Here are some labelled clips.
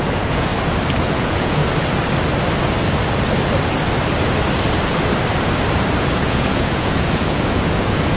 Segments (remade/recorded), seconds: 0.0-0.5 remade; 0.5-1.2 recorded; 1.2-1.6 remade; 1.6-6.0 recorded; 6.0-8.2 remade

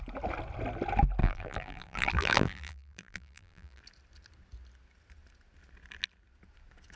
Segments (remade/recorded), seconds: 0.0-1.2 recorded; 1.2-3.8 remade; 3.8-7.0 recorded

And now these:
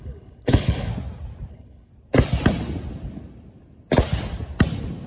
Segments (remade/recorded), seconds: 0.0-0.9 remade; 0.9-1.5 recorded; 1.5-1.9 remade; 1.9-5.1 recorded